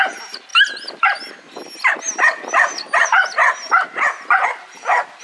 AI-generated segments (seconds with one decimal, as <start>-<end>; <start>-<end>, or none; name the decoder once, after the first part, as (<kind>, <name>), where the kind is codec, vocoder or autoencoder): 0.0-0.5 (vocoder, BigVGAN v2); 2.5-3.2